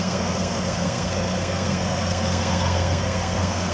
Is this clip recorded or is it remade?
remade